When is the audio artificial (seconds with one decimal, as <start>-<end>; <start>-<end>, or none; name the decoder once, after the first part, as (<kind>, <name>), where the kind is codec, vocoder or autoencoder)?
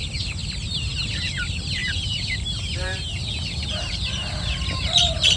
1.8-5.0 (vocoder, BigVGAN v2)